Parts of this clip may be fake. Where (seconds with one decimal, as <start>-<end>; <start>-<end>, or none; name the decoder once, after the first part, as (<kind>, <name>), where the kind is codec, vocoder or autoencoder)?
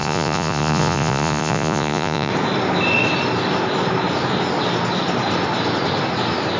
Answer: 0.0-2.3 (vocoder, Vocos)